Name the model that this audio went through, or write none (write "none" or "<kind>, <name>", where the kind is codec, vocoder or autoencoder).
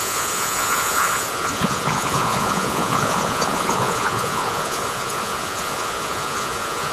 vocoder, Vocos